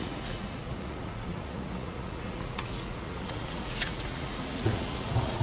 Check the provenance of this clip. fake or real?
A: fake